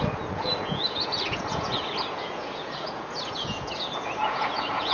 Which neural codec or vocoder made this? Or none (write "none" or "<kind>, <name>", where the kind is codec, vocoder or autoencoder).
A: vocoder, Vocos